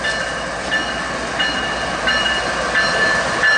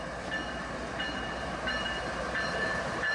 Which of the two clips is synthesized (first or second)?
second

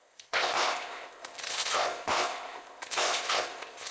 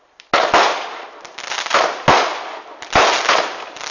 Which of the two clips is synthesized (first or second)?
first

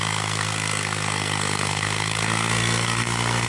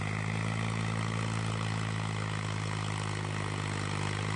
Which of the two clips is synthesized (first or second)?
first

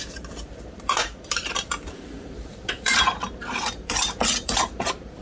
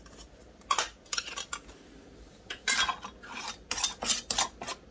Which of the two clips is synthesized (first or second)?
first